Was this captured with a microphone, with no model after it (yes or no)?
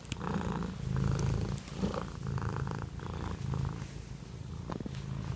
yes